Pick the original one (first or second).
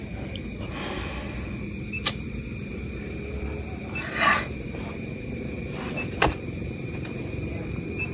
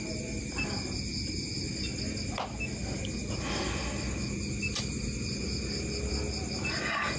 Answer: second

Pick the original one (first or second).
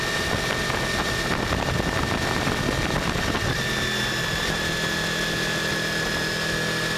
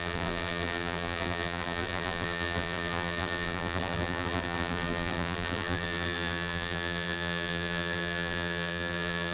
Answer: first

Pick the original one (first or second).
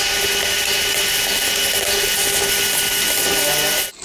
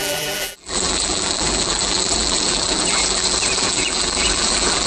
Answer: first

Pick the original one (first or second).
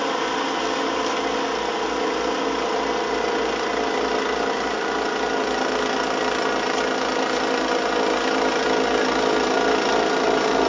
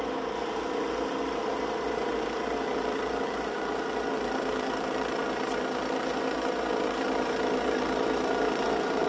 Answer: first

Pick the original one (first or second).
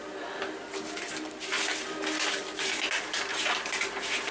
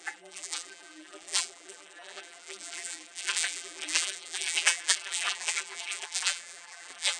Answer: first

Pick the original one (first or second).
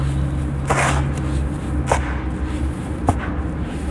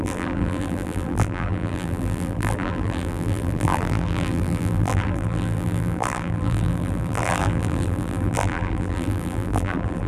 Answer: first